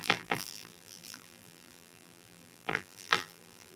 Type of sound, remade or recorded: remade